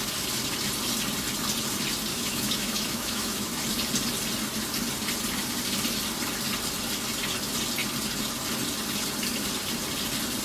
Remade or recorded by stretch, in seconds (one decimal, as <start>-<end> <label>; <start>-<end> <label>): 0.0-2.1 recorded; 2.1-3.6 remade; 3.6-10.4 recorded